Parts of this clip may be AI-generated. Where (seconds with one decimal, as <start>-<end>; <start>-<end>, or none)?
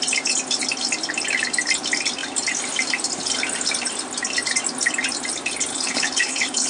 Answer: 5.7-6.7